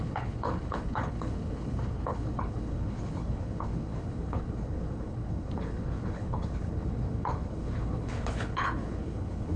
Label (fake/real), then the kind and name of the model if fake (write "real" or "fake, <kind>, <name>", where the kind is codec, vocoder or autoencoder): fake, codec, HILCodec